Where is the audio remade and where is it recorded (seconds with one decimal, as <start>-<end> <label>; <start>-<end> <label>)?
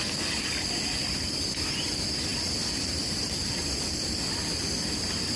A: 0.0-5.4 recorded